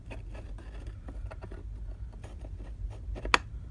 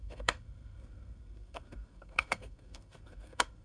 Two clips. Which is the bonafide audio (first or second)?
first